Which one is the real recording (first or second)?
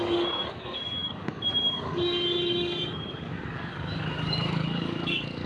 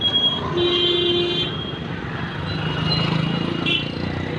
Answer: second